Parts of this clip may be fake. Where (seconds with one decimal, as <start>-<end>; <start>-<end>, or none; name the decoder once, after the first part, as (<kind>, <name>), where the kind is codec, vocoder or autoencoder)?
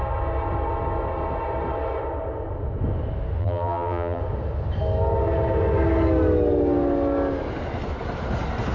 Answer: 3.4-4.2 (vocoder, BigVGAN v2)